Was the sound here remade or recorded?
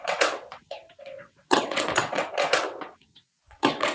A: remade